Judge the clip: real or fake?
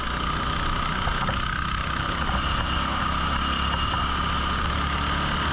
real